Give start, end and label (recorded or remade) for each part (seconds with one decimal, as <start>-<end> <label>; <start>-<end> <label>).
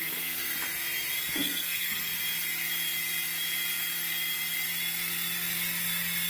0.0-0.5 remade; 0.5-1.3 recorded; 1.3-2.1 remade; 2.1-6.3 recorded